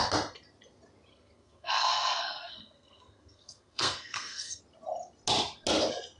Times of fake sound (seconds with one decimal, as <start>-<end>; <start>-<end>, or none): 1.1-4.6